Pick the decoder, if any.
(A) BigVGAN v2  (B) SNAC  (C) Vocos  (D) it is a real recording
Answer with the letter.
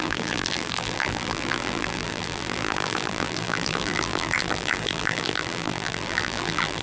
A